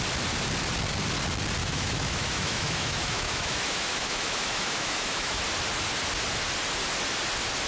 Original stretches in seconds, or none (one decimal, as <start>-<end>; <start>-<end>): 0.0-1.6; 5.4-7.7